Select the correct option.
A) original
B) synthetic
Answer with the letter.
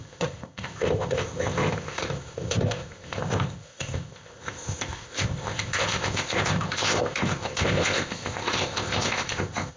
B